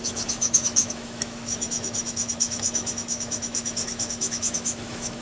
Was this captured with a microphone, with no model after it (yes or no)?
no